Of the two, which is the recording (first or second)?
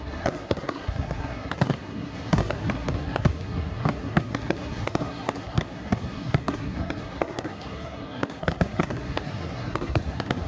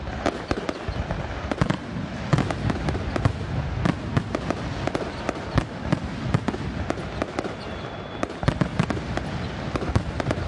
second